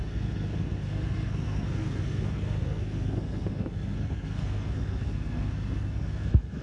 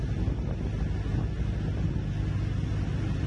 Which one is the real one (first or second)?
second